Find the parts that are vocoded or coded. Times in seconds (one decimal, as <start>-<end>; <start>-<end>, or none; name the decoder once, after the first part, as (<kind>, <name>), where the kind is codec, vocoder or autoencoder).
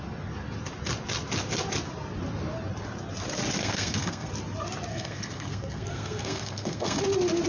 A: 3.6-4.3 (codec, SNAC); 4.9-7.0